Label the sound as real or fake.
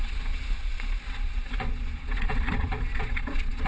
fake